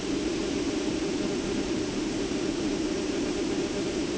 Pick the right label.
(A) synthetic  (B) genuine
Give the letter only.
A